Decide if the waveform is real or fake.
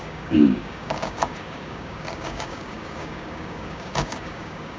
fake